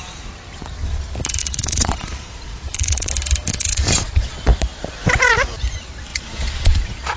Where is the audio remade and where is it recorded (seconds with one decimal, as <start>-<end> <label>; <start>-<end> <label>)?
0.0-1.4 recorded; 1.4-3.1 remade; 3.1-3.5 recorded; 3.5-4.4 remade; 4.4-6.1 recorded; 6.1-7.2 remade